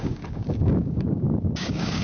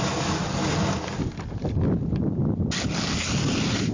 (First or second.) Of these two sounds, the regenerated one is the first